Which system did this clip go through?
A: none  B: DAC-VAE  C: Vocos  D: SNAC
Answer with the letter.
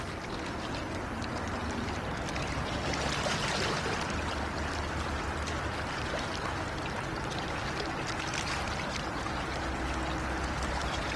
A